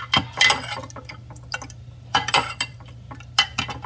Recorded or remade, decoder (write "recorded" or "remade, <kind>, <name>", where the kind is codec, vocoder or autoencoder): recorded